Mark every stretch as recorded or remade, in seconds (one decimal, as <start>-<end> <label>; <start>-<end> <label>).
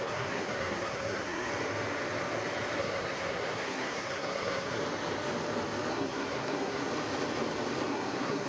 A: 0.0-1.5 remade; 1.5-2.8 recorded; 2.8-4.8 remade; 4.8-5.9 recorded; 5.9-6.9 remade; 6.9-7.9 recorded; 7.9-8.5 remade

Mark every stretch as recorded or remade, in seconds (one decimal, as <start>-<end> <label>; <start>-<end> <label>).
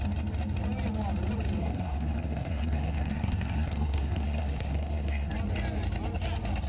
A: 0.0-1.6 recorded; 1.6-5.3 remade; 5.3-6.7 recorded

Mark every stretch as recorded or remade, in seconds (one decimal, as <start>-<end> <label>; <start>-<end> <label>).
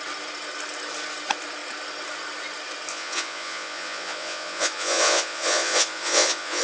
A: 0.0-2.9 recorded; 2.9-6.6 remade